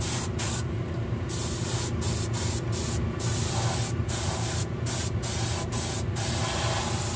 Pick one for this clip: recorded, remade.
recorded